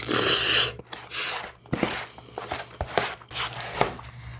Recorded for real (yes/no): yes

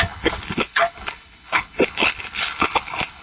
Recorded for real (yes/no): no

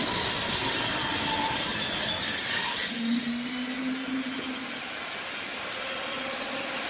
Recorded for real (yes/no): yes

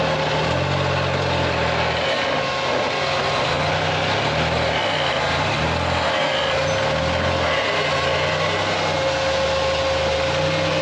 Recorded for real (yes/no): yes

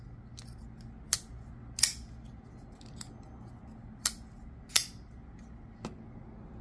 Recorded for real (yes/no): yes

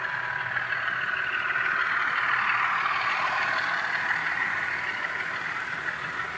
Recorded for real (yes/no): yes